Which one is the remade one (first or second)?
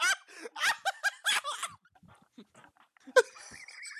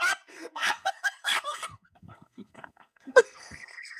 second